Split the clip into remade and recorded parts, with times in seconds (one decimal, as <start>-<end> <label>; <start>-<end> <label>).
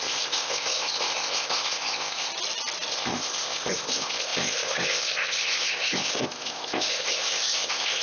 0.0-2.3 remade; 2.3-2.9 recorded; 2.9-8.0 remade